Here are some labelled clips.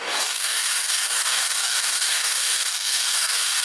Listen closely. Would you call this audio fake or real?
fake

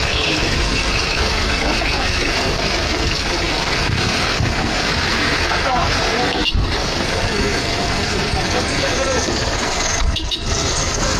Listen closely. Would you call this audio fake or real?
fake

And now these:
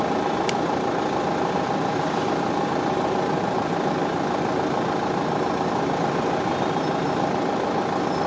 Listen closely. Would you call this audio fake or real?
fake